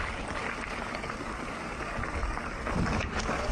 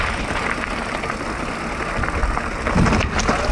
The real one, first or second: second